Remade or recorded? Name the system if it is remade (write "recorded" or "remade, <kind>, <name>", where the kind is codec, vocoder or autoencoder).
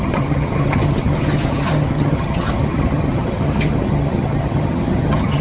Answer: remade, vocoder, HiFi-GAN